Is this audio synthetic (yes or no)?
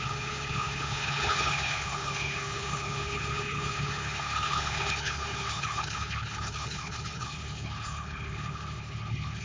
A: yes